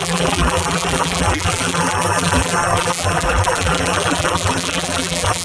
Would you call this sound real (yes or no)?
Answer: no